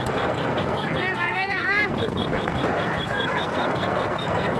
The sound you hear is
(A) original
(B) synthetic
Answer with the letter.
B